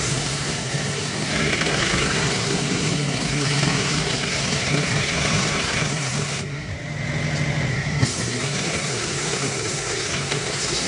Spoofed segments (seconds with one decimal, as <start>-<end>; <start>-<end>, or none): 0.0-6.7; 7.7-10.9